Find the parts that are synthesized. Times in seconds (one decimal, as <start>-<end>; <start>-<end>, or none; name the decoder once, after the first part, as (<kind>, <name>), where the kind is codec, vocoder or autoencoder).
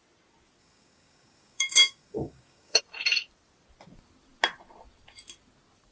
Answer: 0.6-2.8 (codec, DAC)